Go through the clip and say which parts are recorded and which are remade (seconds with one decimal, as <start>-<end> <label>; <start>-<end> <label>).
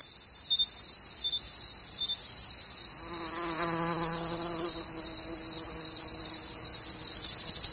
0.0-7.7 recorded